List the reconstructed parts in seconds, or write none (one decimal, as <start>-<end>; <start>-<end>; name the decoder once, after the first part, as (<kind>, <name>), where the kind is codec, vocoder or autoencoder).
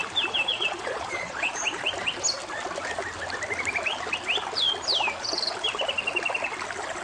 0.5-1.5 (vocoder, Vocos)